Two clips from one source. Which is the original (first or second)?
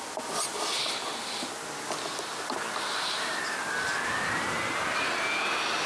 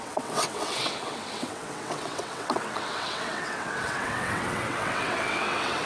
first